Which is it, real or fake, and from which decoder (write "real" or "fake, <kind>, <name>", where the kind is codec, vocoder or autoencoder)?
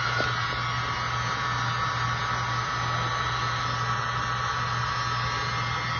real